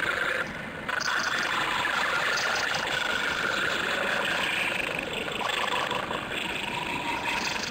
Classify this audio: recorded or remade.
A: recorded